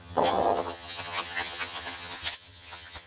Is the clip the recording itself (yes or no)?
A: no